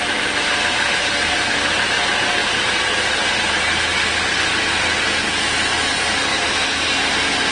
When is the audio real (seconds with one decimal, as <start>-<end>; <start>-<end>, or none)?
0.0-6.3; 6.9-7.5